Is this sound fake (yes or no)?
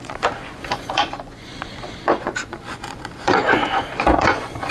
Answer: yes